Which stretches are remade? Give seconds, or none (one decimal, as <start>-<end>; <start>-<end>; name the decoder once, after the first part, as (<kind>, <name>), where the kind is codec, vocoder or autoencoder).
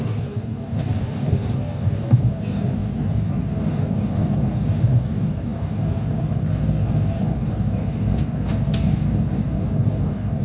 0.0-10.4 (codec, DAC)